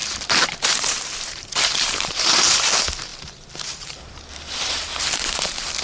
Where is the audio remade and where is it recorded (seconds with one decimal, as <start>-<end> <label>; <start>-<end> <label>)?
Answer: 0.0-5.8 remade